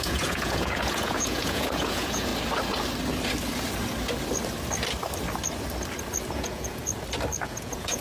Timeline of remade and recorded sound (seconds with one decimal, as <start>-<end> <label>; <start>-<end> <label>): 0.0-2.3 remade; 2.3-6.3 recorded; 6.3-6.8 remade; 6.8-7.4 recorded; 7.4-8.0 remade